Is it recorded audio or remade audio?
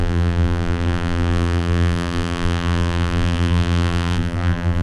remade